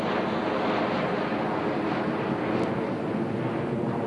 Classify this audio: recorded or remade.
recorded